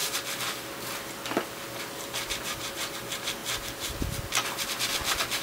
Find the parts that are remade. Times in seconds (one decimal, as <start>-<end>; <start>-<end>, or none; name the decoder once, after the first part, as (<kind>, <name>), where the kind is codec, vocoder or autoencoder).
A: 0.0-3.4 (vocoder, BigVGAN v2); 4.1-5.4

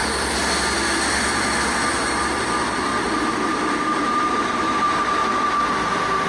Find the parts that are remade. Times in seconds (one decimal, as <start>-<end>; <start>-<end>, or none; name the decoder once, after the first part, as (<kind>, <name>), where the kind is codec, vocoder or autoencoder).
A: 1.9-5.2 (vocoder, BigVGAN v2)

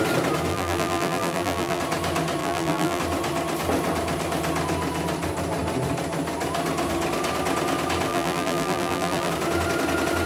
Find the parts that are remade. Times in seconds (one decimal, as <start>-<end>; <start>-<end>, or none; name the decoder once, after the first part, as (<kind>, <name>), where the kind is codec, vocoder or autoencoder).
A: 0.5-1.8 (vocoder, BigVGAN v2); 2.4-3.0; 8.1-9.3

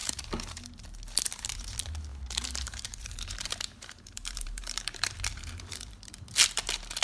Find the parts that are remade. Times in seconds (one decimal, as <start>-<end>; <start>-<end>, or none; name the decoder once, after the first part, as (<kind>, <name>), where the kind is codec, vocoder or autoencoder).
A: 0.0-0.6 (vocoder, BigVGAN v2); 2.1-6.1

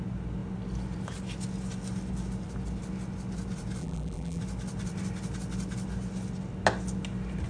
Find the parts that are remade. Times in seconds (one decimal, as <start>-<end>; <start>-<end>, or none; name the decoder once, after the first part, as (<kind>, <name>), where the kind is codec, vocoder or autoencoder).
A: 3.8-4.4 (vocoder, BigVGAN v2)

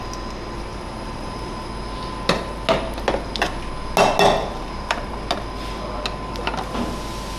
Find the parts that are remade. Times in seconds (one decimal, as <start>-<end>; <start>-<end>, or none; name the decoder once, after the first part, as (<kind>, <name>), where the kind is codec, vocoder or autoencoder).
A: 0.7-1.7 (vocoder, BigVGAN v2); 4.4-5.1

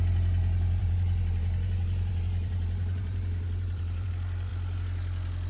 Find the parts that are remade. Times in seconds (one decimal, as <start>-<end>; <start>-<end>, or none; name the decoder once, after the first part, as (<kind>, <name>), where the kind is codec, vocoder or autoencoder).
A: 0.8-4.1 (vocoder, BigVGAN v2)